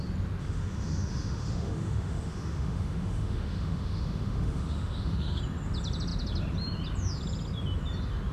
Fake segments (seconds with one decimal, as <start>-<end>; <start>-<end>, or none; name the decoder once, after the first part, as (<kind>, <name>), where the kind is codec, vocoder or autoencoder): 0.4-5.4 (autoencoder, DAC-VAE)